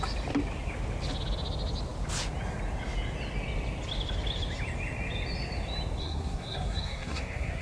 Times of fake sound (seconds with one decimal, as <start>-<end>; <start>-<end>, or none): 6.0-7.6